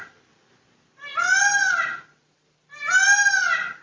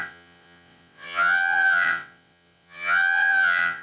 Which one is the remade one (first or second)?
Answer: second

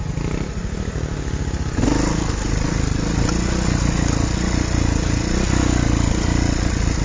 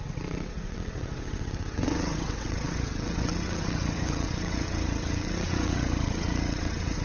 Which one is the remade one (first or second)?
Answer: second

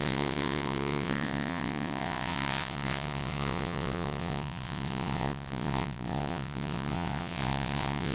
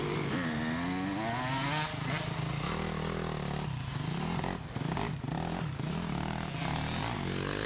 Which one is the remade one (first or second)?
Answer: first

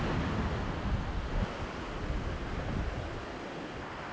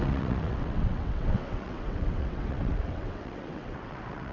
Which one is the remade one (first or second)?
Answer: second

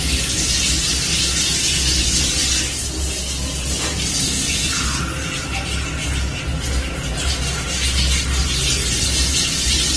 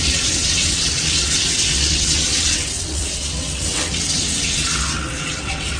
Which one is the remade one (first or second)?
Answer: second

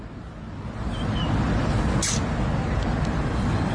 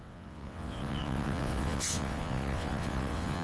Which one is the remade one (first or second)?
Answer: second